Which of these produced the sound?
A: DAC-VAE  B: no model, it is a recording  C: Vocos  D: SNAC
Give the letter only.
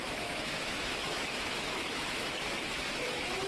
A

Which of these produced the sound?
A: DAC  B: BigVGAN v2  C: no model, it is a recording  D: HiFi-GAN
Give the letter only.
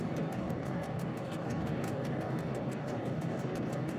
A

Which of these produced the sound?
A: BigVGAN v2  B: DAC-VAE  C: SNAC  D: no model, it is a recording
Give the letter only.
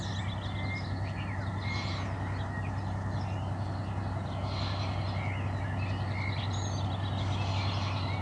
D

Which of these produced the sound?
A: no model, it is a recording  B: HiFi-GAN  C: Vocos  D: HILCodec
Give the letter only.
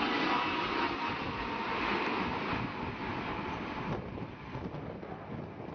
A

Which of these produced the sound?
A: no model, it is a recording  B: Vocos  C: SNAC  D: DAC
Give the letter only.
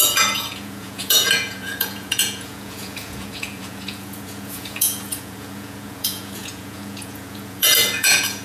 B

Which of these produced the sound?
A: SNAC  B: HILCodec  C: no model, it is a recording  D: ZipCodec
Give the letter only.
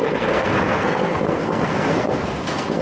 A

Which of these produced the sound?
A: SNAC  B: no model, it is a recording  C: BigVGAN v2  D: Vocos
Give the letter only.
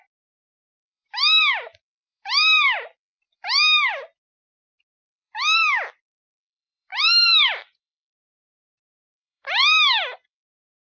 C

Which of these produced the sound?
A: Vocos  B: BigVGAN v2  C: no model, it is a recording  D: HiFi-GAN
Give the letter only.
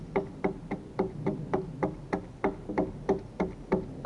C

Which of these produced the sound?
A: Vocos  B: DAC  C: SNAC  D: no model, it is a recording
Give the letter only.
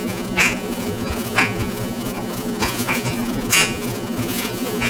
A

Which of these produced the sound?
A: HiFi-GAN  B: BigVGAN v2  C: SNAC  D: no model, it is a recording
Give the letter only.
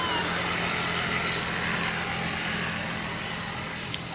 D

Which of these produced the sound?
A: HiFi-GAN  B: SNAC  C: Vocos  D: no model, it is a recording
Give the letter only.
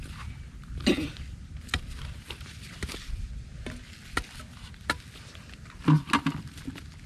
D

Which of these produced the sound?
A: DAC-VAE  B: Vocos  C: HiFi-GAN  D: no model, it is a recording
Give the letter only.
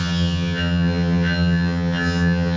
C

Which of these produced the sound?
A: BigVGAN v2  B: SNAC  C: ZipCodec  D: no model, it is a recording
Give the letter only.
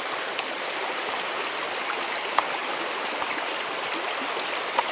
A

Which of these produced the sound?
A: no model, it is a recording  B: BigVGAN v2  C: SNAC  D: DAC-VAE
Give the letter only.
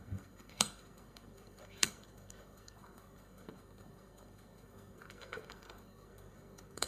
C